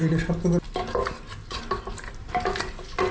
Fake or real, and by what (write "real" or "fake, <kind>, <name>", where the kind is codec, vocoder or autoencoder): real